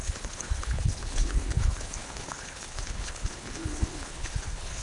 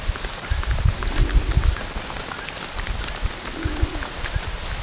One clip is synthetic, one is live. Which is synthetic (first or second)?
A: first